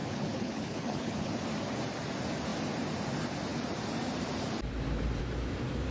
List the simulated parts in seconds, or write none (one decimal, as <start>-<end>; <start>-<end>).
0.0-1.3